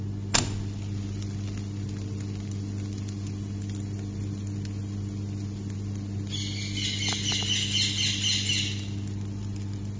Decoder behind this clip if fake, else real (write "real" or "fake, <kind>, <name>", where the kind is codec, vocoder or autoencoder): real